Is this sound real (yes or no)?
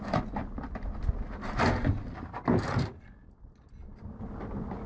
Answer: yes